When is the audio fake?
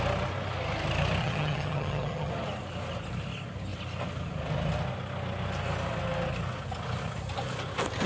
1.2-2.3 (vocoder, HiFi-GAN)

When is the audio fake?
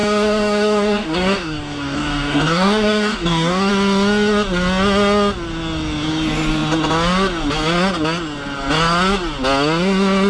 0.0-3.7 (codec, DAC)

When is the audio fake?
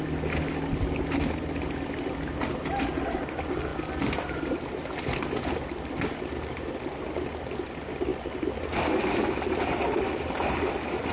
none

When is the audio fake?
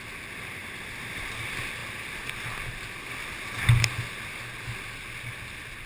0.0-0.6 (vocoder, BigVGAN v2); 1.1-1.8; 5.3-5.9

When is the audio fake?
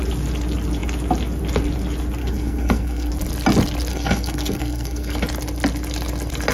2.2-3.1 (codec, SNAC); 3.9-5.2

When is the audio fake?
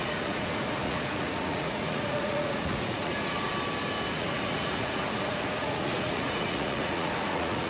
0.0-3.5 (vocoder, Vocos); 4.1-7.7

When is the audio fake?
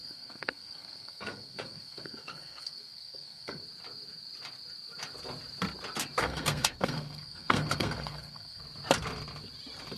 0.0-3.6 (codec, SNAC); 6.2-8.6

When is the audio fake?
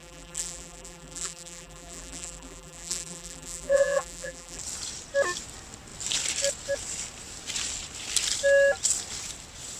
0.0-4.6 (vocoder, BigVGAN v2)